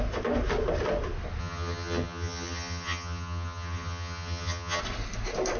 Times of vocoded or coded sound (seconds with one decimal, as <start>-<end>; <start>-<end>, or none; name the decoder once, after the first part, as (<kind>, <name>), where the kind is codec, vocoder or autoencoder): 1.4-4.8 (vocoder, HiFi-GAN)